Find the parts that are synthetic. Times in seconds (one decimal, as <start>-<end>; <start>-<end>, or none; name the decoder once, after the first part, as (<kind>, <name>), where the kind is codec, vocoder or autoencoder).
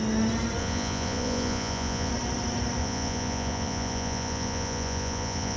0.6-2.1 (vocoder, Vocos); 2.8-5.6